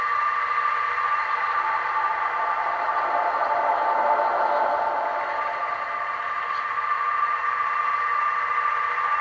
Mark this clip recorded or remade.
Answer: recorded